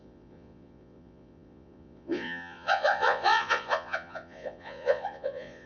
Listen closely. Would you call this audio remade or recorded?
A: remade